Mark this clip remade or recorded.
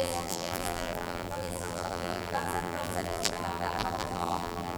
remade